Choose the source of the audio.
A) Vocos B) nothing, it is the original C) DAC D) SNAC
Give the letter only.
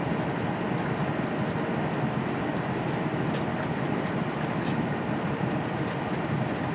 B